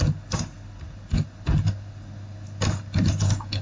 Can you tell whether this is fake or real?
real